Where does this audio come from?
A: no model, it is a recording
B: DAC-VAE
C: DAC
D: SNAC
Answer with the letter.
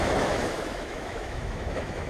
B